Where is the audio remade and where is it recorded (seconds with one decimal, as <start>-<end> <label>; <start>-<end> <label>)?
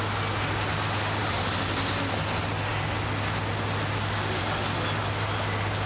0.0-5.9 recorded